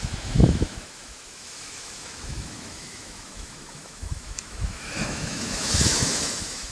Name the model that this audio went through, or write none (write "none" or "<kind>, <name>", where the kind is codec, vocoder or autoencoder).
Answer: autoencoder, DAC-VAE